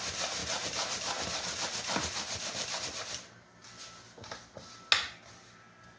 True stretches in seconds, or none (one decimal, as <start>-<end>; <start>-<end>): 0.0-6.0